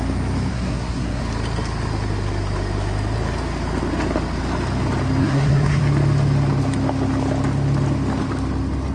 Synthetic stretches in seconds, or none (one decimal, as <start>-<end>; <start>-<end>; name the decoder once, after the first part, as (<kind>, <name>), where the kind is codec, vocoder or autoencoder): 0.5-1.2 (codec, SNAC); 5.2-5.8